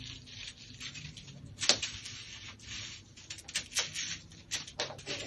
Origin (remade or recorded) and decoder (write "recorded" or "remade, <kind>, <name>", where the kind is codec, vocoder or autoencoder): recorded